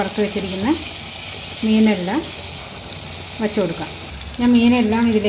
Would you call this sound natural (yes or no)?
yes